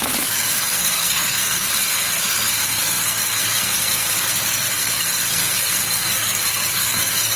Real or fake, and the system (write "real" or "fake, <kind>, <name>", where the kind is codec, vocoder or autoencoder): fake, codec, SNAC